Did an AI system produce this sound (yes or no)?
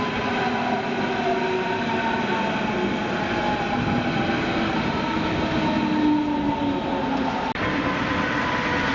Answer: no